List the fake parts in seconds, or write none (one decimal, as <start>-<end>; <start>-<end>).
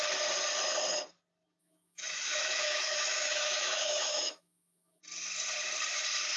1.6-5.0